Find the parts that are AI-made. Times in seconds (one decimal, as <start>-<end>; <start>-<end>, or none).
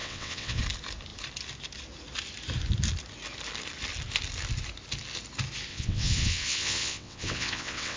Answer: 0.0-0.6; 5.7-8.0